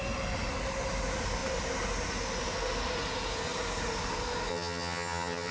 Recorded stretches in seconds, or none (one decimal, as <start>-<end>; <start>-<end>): 0.0-4.5